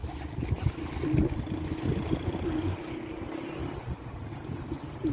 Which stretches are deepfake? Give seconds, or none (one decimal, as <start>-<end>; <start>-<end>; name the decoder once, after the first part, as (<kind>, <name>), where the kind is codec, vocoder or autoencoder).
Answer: 3.1-5.1 (vocoder, BigVGAN v2)